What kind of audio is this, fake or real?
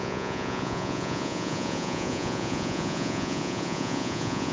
fake